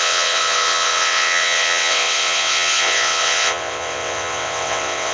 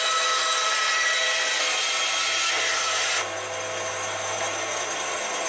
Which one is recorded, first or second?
second